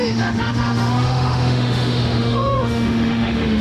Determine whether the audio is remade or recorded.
remade